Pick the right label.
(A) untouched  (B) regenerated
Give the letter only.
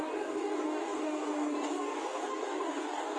B